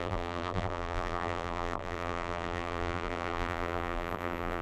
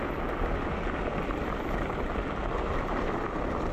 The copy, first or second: first